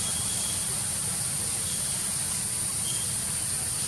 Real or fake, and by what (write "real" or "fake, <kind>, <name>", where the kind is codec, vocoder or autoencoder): real